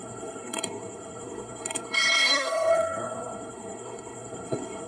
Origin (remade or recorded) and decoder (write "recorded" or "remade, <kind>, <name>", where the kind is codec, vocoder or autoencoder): remade, codec, SNAC